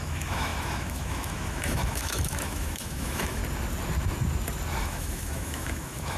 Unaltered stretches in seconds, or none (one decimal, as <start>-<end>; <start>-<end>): 3.4-4.8